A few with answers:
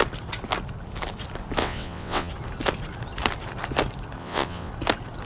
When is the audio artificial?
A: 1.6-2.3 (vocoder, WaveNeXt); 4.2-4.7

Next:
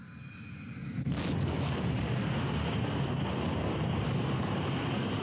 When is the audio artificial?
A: none

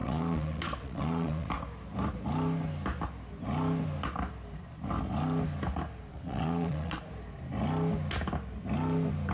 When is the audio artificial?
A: 0.0-1.5 (vocoder, WaveNeXt); 6.1-7.0

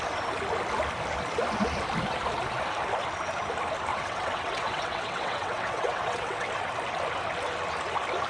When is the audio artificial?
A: 3.9-6.5 (vocoder, WaveNeXt)

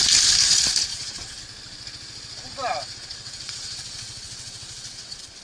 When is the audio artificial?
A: 0.9-1.4 (vocoder, WaveNeXt); 2.8-5.4